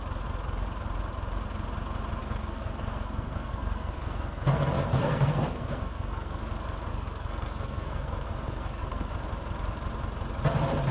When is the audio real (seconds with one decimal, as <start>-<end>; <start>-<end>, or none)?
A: 0.0-2.2; 6.4-6.9; 9.1-10.9